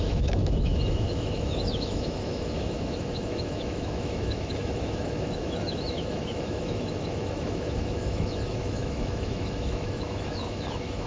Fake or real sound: fake